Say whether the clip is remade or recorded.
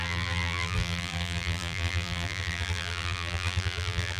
remade